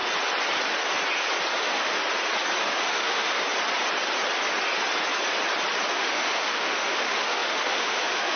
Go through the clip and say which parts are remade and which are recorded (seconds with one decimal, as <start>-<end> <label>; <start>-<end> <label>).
0.0-1.5 recorded; 1.5-2.0 remade; 2.0-2.6 recorded; 2.6-3.4 remade; 3.4-5.9 recorded; 5.9-8.4 remade